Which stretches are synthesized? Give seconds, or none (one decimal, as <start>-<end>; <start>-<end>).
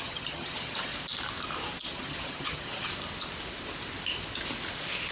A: 0.0-0.9; 1.9-2.9